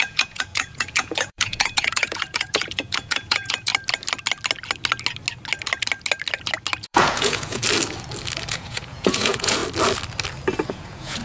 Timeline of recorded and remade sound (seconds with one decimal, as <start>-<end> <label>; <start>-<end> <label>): 0.0-3.7 remade; 3.7-6.8 recorded; 6.8-7.6 remade; 7.6-8.5 recorded; 8.5-9.6 remade; 9.6-10.7 recorded; 10.7-11.2 remade